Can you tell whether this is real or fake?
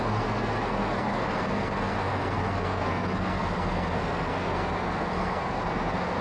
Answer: fake